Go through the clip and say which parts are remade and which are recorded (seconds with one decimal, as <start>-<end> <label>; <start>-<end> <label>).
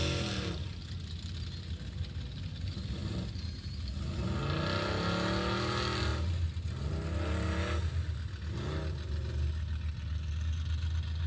0.0-11.3 recorded